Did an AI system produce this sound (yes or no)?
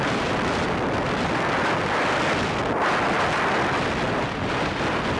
no